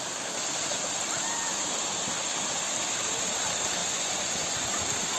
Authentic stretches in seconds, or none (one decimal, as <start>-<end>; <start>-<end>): 0.0-3.8; 4.7-5.2